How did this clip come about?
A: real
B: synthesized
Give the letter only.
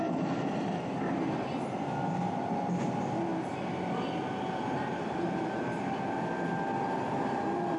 A